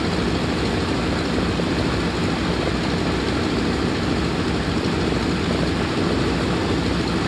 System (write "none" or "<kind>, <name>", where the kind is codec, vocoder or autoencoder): none